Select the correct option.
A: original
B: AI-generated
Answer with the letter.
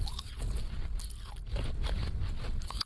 A